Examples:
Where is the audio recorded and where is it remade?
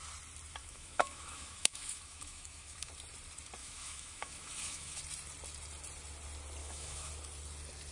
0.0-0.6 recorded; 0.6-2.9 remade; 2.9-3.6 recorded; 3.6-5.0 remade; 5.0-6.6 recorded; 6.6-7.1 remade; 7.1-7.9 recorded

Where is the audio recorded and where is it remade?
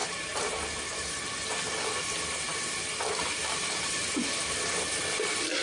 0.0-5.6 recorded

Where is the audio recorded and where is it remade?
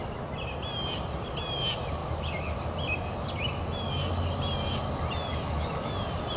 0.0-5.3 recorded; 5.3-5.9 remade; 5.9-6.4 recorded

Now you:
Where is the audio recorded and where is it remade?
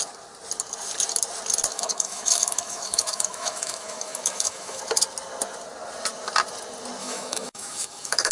0.0-1.7 recorded; 1.7-4.8 remade; 4.8-7.0 recorded; 7.0-8.3 remade